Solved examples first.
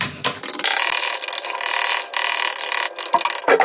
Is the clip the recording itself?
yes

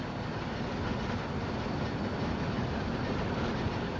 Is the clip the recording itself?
yes